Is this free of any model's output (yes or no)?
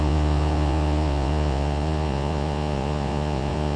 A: no